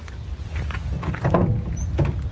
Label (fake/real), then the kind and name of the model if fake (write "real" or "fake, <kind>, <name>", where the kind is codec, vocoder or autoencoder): real